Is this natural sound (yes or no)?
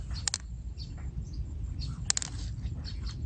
yes